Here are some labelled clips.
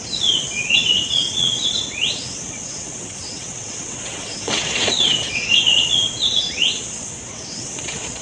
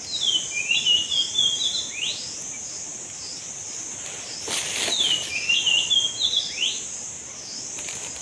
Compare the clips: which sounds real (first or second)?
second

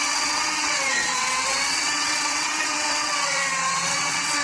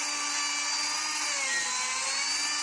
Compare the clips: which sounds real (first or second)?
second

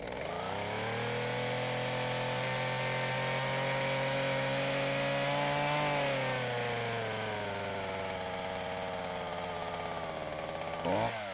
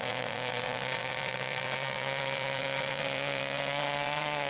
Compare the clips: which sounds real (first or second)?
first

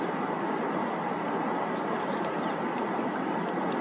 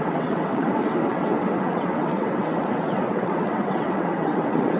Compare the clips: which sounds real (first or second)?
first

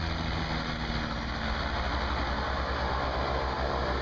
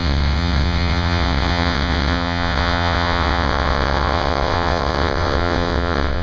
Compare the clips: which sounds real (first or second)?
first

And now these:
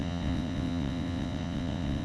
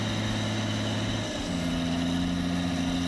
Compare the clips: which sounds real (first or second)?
second